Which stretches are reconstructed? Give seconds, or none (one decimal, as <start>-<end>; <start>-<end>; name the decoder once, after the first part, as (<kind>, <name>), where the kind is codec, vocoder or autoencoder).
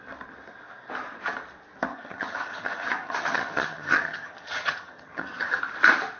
1.9-5.6 (vocoder, HiFi-GAN)